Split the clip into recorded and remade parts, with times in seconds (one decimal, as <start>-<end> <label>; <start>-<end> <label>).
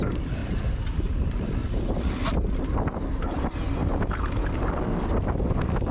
0.0-0.4 recorded; 0.4-1.2 remade; 1.2-5.9 recorded